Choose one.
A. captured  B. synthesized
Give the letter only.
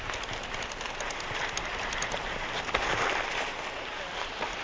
A